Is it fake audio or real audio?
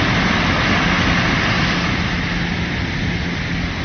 real